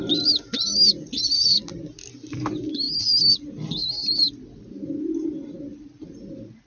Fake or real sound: real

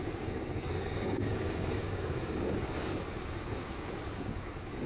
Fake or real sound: fake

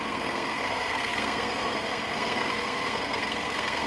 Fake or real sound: fake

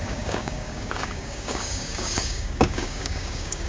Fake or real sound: fake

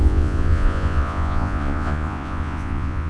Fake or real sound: fake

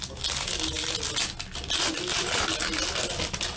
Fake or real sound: real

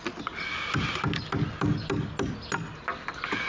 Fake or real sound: real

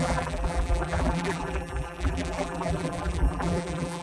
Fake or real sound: fake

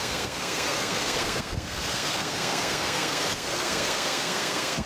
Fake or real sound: fake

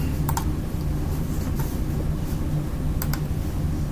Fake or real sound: real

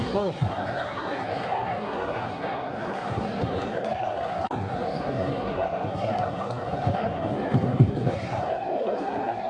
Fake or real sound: fake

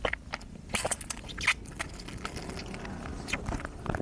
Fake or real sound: real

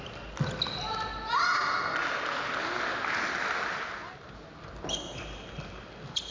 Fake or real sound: real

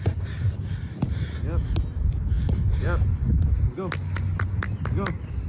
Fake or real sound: real